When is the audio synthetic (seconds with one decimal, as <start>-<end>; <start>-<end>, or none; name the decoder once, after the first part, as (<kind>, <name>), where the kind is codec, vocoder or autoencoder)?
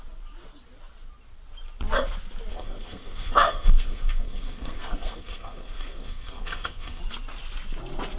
2.5-7.0 (codec, SNAC)